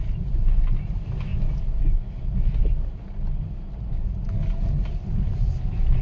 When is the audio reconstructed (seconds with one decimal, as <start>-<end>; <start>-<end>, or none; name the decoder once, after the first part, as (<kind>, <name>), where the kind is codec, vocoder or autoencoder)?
none